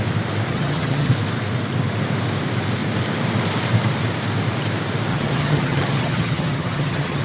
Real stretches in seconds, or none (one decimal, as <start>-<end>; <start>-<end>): 0.0-0.5; 1.1-5.1